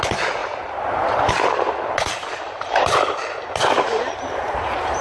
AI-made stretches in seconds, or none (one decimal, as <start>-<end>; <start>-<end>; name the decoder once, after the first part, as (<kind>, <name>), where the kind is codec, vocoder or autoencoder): 0.4-1.3 (vocoder, BigVGAN v2); 2.0-5.0